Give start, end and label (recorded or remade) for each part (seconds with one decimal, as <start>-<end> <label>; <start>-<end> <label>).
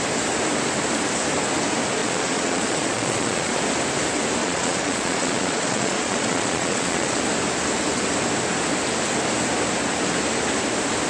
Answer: 0.0-2.0 recorded; 2.0-3.6 remade; 3.6-4.4 recorded; 4.4-7.2 remade; 7.2-11.1 recorded